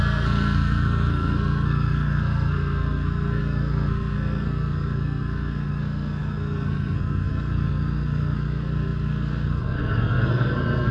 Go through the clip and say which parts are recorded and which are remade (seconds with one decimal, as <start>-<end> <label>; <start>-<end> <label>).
0.0-10.9 remade